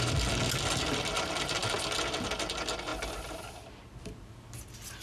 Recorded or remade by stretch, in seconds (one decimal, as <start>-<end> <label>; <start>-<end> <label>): 0.0-5.0 recorded